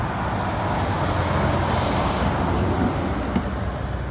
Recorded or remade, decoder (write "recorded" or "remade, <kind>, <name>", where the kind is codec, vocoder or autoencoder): recorded